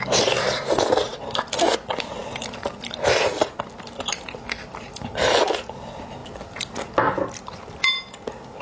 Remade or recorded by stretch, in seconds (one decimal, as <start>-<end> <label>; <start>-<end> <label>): 0.0-8.6 recorded